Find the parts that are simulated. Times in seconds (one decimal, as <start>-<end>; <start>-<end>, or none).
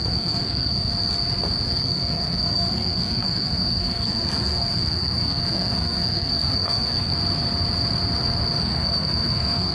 0.0-0.9; 1.7-7.1; 8.6-9.7